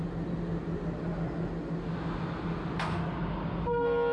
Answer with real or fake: real